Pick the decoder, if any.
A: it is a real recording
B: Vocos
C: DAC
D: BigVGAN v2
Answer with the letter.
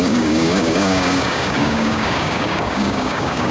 C